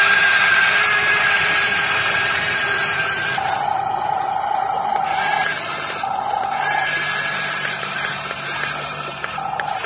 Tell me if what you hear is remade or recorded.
remade